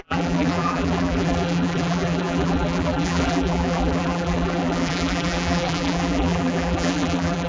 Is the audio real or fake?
fake